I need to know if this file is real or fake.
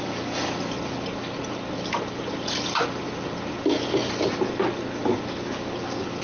real